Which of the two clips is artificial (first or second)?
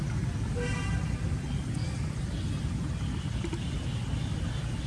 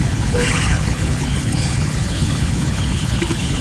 second